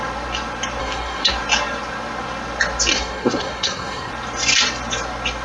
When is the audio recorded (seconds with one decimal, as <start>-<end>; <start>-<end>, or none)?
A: 0.0-0.8; 1.3-2.9; 4.1-5.4